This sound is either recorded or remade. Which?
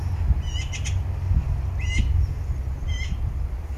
recorded